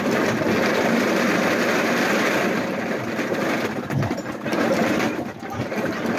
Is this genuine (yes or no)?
yes